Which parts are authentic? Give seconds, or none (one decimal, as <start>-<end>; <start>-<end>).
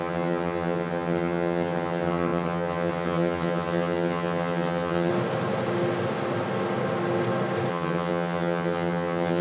5.1-7.7